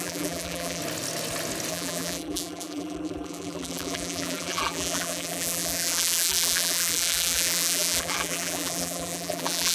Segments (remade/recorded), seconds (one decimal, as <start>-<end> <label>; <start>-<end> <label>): 0.0-0.8 remade; 0.8-1.7 recorded; 1.7-9.7 remade